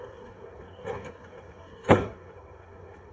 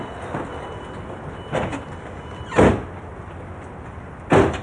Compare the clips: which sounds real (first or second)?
second